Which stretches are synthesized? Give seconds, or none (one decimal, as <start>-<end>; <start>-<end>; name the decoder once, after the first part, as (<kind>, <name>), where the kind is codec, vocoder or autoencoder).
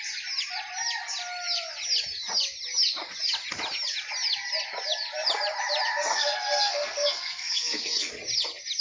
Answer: 6.1-8.1 (codec, SNAC)